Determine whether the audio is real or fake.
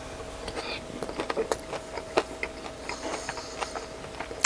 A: real